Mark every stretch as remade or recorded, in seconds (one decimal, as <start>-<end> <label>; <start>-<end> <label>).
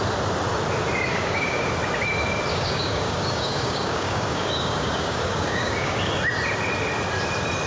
0.0-1.1 recorded; 1.1-1.7 remade; 1.7-2.5 recorded; 2.5-6.1 remade; 6.1-7.7 recorded